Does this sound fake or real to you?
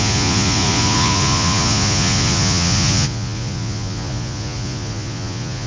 fake